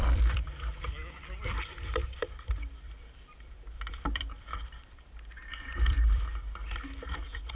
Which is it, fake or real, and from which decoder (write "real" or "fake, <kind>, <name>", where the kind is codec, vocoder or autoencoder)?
fake, vocoder, BigVGAN v2